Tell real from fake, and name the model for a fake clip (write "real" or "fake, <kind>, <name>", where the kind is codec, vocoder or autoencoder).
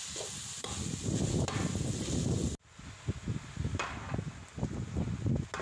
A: real